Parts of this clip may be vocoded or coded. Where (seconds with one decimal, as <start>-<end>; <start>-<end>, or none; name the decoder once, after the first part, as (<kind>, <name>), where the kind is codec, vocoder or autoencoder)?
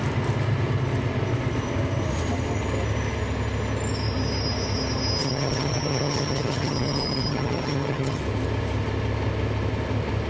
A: 5.2-8.2 (vocoder, HiFi-GAN)